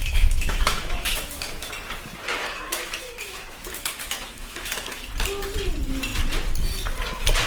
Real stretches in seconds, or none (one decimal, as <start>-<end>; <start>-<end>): 1.7-2.4; 5.1-7.5